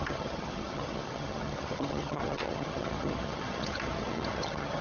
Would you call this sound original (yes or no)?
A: no